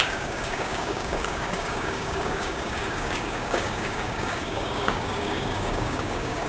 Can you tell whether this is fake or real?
fake